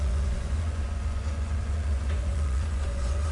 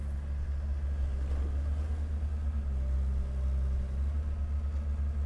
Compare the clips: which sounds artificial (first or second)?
first